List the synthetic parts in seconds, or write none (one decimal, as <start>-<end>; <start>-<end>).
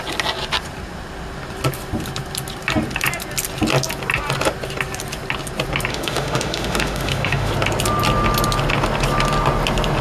5.9-7.5